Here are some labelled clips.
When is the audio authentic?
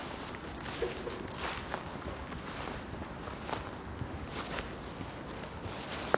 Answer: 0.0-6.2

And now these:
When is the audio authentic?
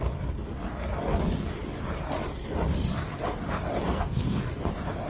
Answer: 0.0-3.9; 4.4-5.1